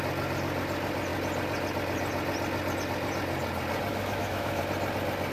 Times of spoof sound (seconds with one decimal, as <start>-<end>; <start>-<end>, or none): 3.9-4.6